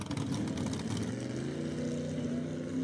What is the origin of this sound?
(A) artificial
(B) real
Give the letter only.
B